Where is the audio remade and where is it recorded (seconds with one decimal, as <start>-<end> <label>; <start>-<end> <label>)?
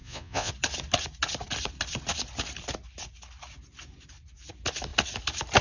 0.0-0.5 remade; 0.5-5.6 recorded